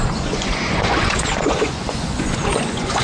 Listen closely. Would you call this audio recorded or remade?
remade